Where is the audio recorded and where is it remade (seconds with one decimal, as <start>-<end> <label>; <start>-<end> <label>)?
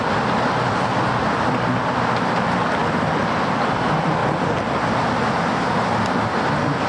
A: 0.0-6.9 recorded